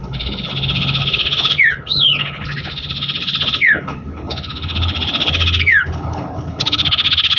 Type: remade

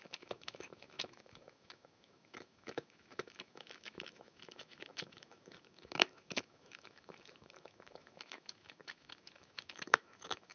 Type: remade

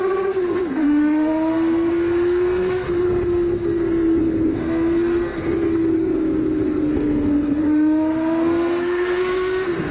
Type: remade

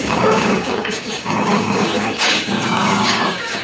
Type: remade